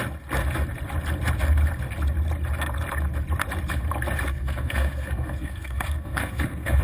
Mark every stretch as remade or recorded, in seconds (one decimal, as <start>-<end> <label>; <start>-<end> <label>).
0.0-4.3 recorded; 4.3-6.8 remade